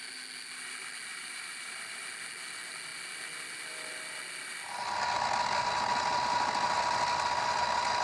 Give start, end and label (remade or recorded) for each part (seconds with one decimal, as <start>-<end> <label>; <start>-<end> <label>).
0.0-1.1 recorded; 1.1-2.0 remade; 2.0-8.0 recorded